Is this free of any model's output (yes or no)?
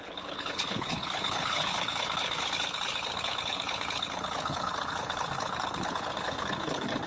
no